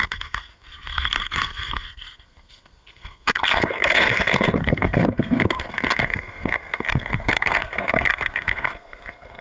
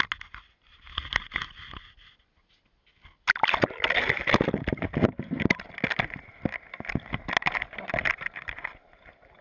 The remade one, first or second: first